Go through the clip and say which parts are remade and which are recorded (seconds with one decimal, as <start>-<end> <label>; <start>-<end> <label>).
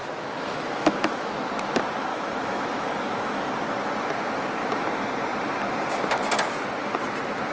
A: 0.0-1.3 remade; 1.3-2.1 recorded; 2.1-3.5 remade; 3.5-7.5 recorded